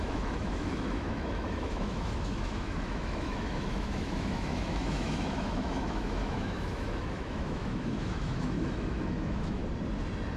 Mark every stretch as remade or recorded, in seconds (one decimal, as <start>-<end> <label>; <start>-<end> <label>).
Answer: 0.0-9.6 remade; 9.6-10.4 recorded